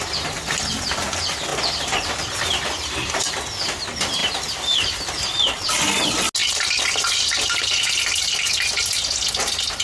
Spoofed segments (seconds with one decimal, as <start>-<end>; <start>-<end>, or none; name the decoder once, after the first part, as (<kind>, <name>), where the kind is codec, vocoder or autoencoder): 1.5-3.3 (vocoder, BigVGAN v2); 4.2-5.7; 6.4-8.5